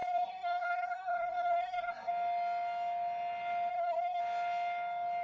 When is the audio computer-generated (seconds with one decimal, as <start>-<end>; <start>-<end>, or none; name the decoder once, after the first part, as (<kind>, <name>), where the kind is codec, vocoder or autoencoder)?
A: 0.0-2.1 (codec, SNAC); 3.7-4.2